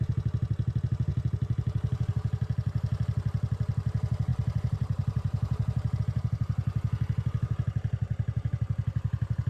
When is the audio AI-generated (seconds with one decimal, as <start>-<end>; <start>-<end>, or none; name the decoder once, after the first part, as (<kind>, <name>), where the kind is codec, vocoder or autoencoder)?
1.1-2.1 (vocoder, BigVGAN v2); 4.3-6.0